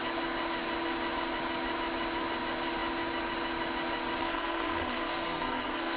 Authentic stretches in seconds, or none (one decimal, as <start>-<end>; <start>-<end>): 0.0-4.2